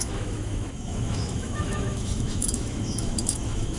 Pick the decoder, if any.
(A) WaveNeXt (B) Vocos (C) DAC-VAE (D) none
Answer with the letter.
C